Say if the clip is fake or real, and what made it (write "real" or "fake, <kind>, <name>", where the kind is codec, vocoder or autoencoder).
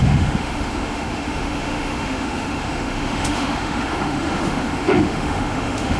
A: fake, autoencoder, DAC-VAE